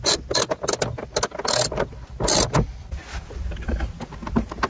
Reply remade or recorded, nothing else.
recorded